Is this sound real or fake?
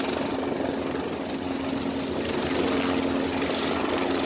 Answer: real